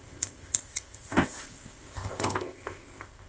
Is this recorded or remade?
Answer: remade